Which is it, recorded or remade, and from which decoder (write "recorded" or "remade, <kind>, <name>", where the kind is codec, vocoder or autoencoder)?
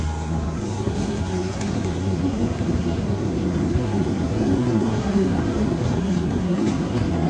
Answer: remade, codec, SNAC